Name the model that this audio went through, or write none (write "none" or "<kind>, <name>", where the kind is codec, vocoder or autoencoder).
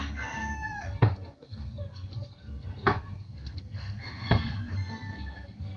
codec, SNAC